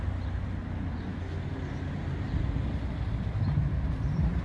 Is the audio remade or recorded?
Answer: recorded